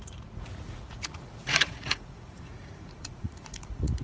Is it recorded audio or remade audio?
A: remade